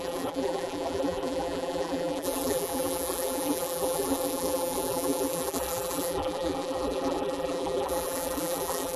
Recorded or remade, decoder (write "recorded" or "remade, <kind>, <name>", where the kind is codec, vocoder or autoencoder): remade, vocoder, BigVGAN v2